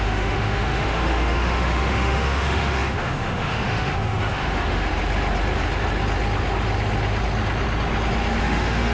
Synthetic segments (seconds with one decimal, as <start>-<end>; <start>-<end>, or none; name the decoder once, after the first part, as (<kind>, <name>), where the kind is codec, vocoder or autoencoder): 0.0-4.9 (autoencoder, DAC-VAE); 8.4-8.9